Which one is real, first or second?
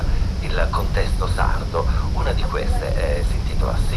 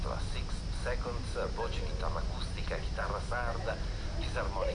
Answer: second